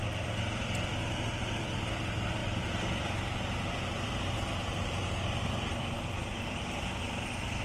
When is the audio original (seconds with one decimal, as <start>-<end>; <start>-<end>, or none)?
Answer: none